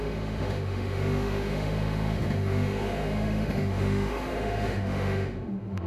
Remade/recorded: remade